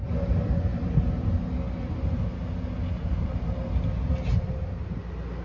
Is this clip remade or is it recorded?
recorded